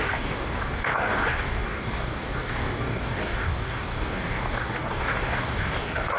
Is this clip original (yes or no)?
no